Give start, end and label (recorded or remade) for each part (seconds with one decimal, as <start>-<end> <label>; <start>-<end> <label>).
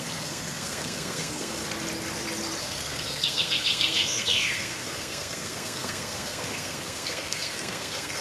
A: 0.0-1.6 remade; 1.6-2.6 recorded; 2.6-8.2 remade